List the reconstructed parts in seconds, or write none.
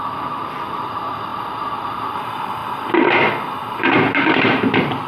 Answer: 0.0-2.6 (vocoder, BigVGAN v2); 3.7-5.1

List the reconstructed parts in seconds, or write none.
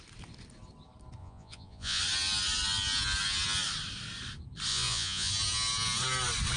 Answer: 1.2-2.0 (vocoder, Vocos); 4.7-5.3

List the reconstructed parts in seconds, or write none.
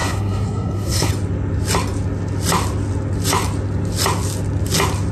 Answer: 0.0-1.1 (codec, SNAC)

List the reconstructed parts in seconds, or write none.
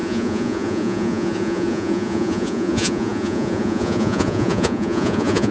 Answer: 0.0-5.5 (vocoder, Vocos)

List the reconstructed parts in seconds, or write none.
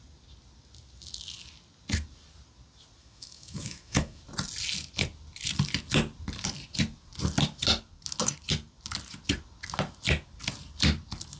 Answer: 3.0-4.2 (autoencoder, DAC-VAE)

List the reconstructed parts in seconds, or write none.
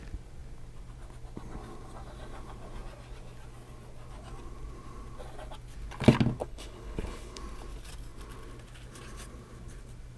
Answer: 6.4-7.4 (codec, HILCodec)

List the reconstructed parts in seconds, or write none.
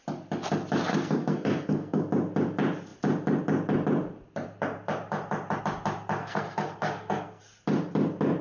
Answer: 0.9-2.0 (codec, SNAC); 6.2-7.4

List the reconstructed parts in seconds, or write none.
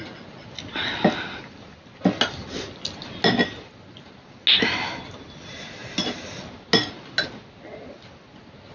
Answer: none